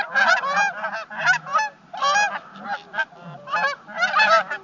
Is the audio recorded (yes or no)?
yes